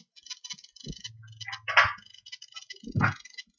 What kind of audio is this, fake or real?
real